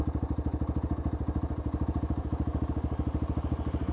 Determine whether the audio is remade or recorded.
recorded